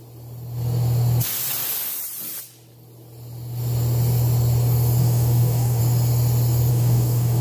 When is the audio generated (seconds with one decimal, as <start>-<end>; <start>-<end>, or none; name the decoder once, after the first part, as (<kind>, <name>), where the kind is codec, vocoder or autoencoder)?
5.0-5.8 (codec, DAC); 6.7-7.4